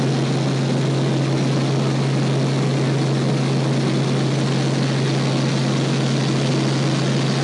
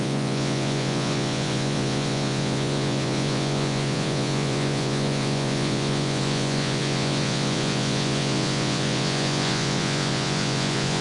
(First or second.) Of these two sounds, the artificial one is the second